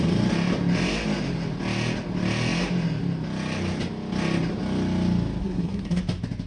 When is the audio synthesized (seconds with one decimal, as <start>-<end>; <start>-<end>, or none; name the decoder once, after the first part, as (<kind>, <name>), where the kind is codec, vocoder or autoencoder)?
5.4-6.0 (codec, SNAC)